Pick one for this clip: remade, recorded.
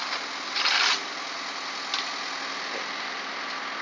recorded